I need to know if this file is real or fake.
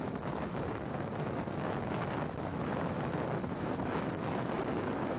fake